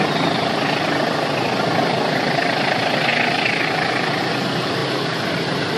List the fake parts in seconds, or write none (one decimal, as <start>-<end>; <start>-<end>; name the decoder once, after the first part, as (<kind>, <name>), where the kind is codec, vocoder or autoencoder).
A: none